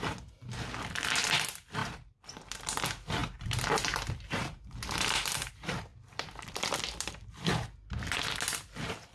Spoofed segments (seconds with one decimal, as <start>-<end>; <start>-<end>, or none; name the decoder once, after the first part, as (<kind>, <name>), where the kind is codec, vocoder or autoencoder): 1.8-2.5 (vocoder, BigVGAN v2); 3.2-5.5; 5.9-7.1